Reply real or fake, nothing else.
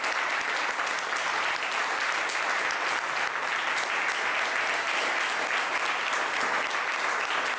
real